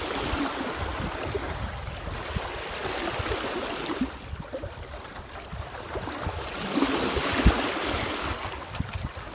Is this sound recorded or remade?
recorded